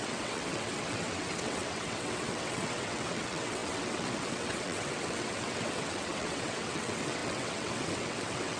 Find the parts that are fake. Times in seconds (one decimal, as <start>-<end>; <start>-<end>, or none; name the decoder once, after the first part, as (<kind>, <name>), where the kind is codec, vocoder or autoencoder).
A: 0.0-8.6 (vocoder, WaveNeXt)